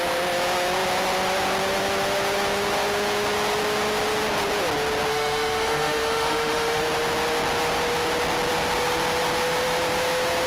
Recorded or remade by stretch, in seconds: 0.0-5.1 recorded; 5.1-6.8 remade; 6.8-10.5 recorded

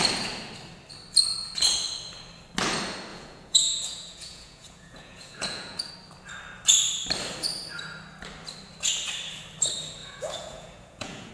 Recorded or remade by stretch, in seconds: 0.0-3.1 recorded; 3.1-5.9 remade; 5.9-10.0 recorded; 10.0-11.3 remade

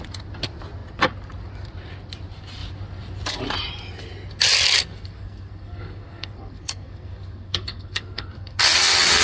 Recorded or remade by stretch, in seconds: 0.0-4.8 recorded; 4.8-8.6 remade; 8.6-9.2 recorded

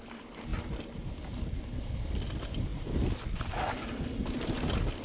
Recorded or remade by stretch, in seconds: 0.0-5.0 recorded

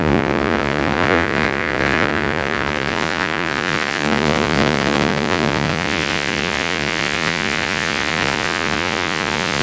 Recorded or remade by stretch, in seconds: 0.0-9.6 remade

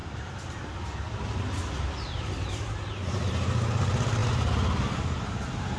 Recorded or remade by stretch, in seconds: 0.0-5.8 recorded

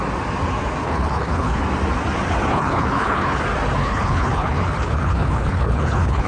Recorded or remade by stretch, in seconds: 0.0-0.8 recorded; 0.8-1.6 remade; 1.6-2.5 recorded; 2.5-3.4 remade; 3.4-3.8 recorded; 3.8-6.3 remade

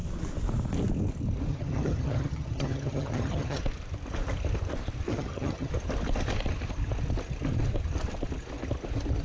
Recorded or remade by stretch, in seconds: 0.0-1.5 recorded; 1.5-3.6 remade; 3.6-5.1 recorded; 5.1-5.7 remade; 5.7-9.2 recorded